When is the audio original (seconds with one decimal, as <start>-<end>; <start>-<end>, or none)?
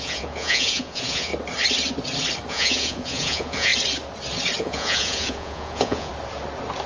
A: 1.3-2.5; 3.7-4.6; 6.1-6.9